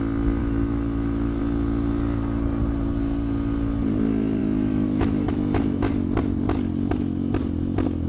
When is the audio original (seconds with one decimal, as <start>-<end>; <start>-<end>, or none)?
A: 0.0-0.4; 1.4-4.4; 6.2-8.1